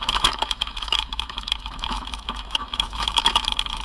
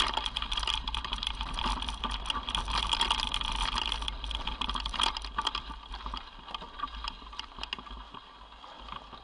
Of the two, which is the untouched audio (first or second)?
second